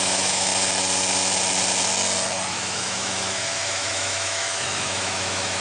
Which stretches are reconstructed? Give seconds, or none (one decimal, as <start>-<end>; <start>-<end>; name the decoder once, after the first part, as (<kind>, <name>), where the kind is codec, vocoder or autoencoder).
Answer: 0.0-0.5 (autoencoder, DAC-VAE); 2.5-5.6